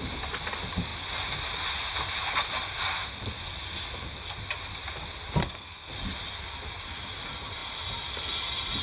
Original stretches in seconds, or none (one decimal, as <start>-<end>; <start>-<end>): 0.0-5.4; 5.9-8.8